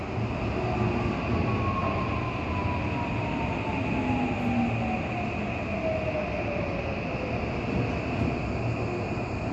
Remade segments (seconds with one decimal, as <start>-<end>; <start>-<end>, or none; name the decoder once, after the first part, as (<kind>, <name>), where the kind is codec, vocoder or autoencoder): none